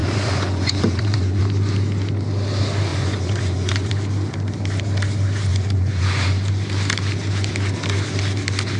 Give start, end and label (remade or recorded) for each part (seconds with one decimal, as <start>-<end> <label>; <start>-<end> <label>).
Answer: 0.0-1.4 remade; 1.4-2.9 recorded; 2.9-3.9 remade; 3.9-5.5 recorded; 5.5-6.4 remade; 6.4-8.8 recorded